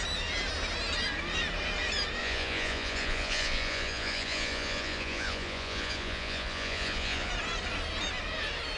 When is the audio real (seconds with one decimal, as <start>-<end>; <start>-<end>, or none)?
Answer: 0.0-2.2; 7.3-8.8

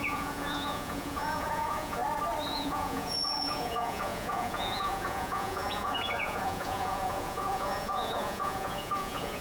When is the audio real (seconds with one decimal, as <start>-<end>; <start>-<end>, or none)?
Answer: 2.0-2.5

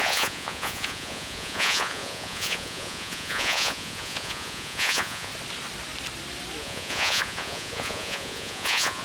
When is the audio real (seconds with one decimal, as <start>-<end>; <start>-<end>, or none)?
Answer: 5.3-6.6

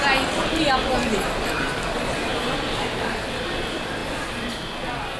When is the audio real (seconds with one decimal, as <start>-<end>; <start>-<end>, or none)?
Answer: 0.0-5.2

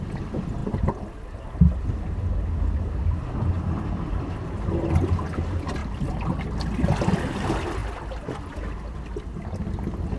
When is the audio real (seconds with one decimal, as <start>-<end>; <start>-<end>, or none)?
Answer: 0.0-10.2

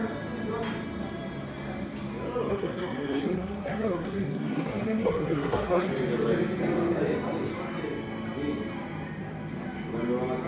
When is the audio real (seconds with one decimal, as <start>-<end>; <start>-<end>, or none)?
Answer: 0.0-2.5; 5.9-10.5

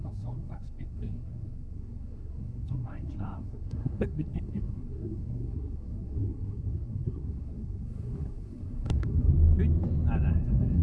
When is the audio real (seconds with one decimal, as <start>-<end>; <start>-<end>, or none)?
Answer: 9.3-10.3

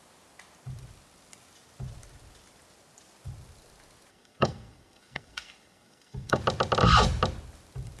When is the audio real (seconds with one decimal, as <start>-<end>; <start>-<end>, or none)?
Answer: 0.0-4.1; 6.4-8.0